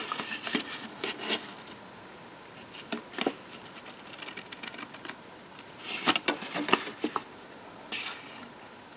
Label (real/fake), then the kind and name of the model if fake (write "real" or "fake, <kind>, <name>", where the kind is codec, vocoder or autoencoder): real